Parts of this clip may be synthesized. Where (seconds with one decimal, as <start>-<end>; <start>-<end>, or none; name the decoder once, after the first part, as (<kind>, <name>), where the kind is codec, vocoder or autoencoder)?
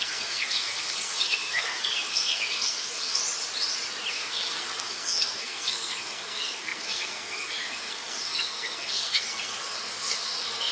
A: 0.0-3.2 (codec, SNAC); 4.1-10.7